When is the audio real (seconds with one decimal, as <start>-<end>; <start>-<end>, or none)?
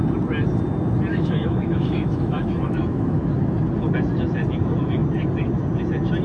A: 0.0-1.1; 3.3-6.2